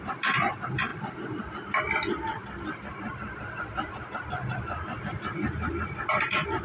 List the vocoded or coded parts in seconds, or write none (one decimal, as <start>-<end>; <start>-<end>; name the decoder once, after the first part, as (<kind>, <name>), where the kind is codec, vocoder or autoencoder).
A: none